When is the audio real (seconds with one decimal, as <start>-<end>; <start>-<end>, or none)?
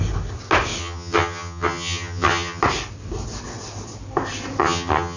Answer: 0.0-0.8; 2.6-4.6